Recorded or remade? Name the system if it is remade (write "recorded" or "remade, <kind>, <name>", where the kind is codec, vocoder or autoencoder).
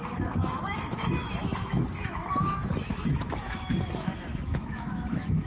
remade, autoencoder, DAC-VAE